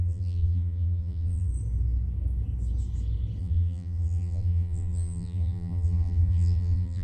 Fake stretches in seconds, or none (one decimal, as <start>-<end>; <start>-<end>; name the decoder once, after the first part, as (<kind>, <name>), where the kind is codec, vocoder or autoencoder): 0.0-1.5 (vocoder, BigVGAN v2); 3.4-7.0